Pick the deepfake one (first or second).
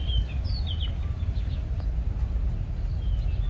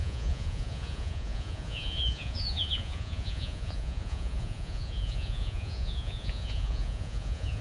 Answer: second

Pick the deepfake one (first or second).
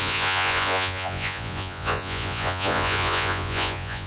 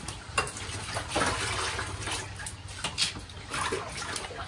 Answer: first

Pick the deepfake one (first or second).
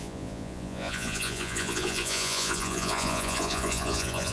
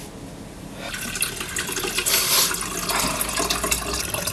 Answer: first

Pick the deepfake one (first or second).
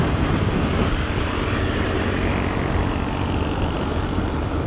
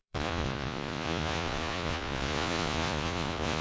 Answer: second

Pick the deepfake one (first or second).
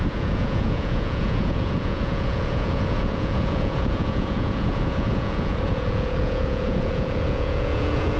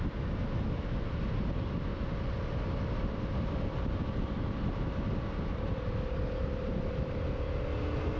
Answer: first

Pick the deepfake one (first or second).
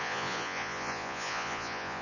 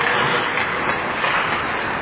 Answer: first